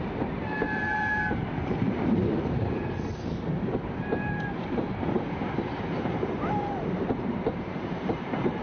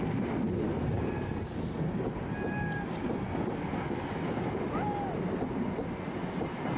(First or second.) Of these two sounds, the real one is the second